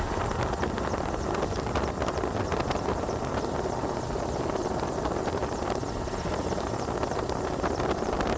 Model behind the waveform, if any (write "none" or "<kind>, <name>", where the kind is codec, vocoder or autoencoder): none